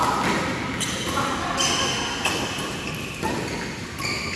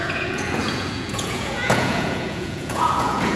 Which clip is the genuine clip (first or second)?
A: first